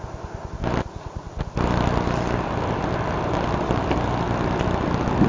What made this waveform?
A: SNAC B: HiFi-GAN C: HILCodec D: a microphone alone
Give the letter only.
D